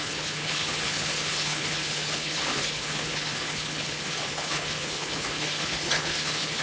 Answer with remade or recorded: remade